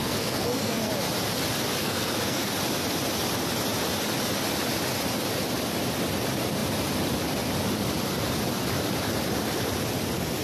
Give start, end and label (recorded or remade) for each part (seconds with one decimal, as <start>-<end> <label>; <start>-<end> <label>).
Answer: 0.0-0.9 remade; 0.9-1.8 recorded; 1.8-2.5 remade; 2.5-10.4 recorded